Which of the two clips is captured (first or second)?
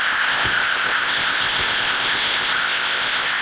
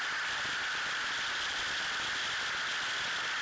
second